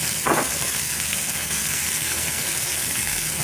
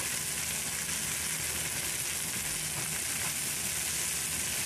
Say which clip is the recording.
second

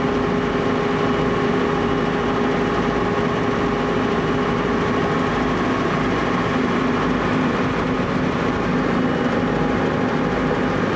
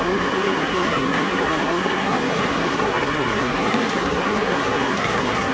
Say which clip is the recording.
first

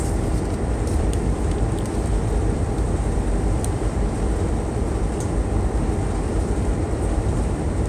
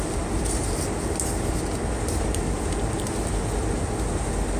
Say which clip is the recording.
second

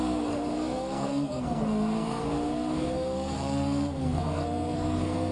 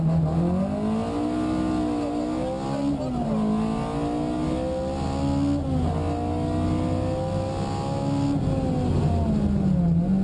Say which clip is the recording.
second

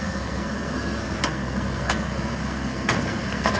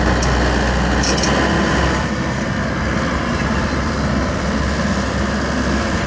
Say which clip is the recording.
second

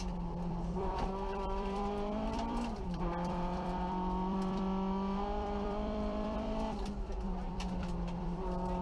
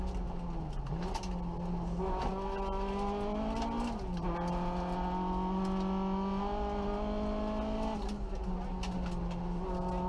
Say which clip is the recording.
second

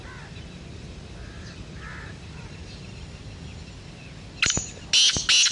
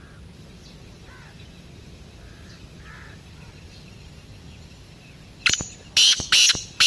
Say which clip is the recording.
first